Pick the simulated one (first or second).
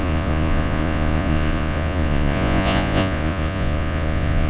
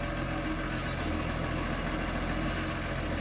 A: first